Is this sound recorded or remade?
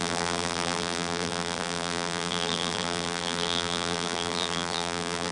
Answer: remade